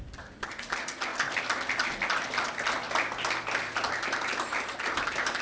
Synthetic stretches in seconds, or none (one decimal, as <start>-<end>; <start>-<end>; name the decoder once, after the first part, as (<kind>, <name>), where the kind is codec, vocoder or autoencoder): none